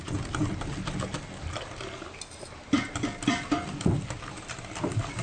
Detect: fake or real real